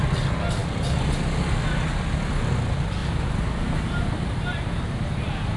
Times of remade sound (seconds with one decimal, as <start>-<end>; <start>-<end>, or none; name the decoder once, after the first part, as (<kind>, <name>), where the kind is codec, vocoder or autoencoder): none